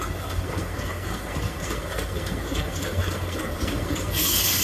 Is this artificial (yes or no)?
yes